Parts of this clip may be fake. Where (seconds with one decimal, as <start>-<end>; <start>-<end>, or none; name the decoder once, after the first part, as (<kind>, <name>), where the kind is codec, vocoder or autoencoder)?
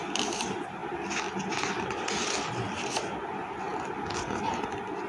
none